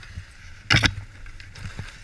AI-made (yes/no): no